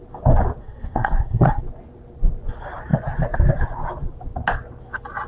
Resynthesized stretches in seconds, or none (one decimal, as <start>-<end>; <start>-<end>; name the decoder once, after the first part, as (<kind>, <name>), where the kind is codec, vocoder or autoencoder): 0.6-1.6 (codec, SNAC)